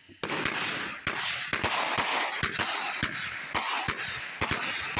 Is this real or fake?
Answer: real